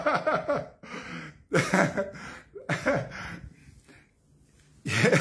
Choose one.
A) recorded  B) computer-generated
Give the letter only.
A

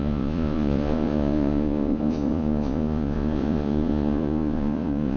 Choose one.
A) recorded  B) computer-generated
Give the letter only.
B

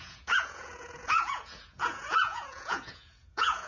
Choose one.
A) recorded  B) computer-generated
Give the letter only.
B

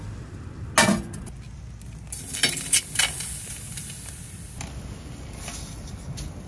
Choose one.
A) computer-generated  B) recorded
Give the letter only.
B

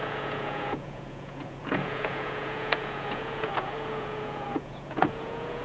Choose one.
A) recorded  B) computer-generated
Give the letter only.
B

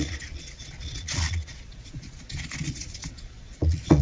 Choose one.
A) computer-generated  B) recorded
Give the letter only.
A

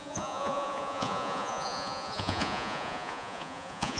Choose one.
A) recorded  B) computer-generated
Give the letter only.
B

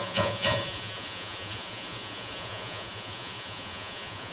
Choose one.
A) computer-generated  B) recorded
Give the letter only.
A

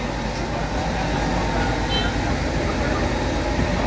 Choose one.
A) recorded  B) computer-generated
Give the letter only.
A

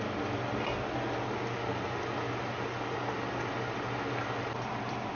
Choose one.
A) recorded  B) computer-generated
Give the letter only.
A